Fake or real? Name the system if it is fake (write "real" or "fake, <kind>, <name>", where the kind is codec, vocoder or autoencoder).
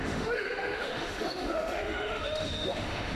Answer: fake, autoencoder, DAC-VAE